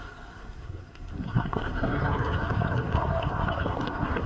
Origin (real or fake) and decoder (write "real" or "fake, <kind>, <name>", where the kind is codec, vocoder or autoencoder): fake, codec, SNAC